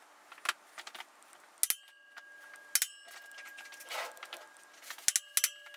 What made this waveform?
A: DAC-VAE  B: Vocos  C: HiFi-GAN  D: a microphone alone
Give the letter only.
D